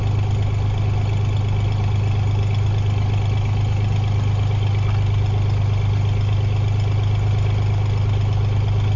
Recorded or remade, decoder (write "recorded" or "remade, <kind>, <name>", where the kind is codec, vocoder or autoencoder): recorded